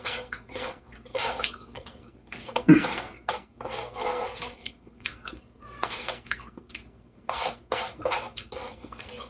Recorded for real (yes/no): no